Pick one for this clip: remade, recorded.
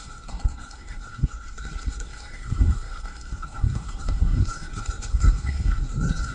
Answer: remade